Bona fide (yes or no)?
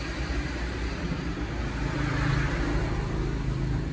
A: yes